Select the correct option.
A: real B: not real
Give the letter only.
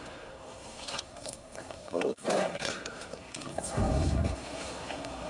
B